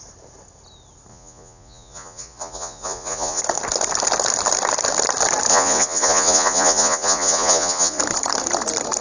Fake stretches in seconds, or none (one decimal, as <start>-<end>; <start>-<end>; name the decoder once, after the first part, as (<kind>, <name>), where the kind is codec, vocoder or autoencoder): 1.1-3.4 (vocoder, Vocos); 5.5-8.0